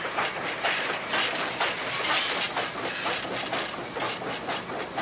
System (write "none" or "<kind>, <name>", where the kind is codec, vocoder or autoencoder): none